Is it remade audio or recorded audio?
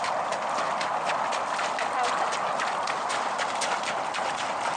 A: recorded